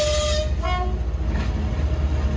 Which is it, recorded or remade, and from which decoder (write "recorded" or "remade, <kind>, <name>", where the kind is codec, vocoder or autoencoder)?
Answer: recorded